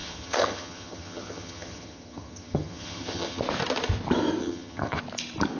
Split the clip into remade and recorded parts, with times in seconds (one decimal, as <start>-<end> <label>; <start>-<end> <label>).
0.0-3.4 remade; 3.4-4.4 recorded; 4.4-5.0 remade; 5.0-5.6 recorded